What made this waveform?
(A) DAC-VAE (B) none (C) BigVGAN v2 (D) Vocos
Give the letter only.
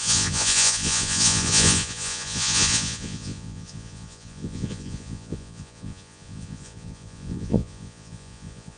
D